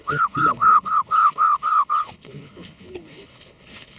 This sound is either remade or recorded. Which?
remade